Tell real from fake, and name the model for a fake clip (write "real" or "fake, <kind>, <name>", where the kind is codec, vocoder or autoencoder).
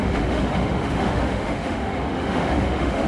fake, autoencoder, DAC-VAE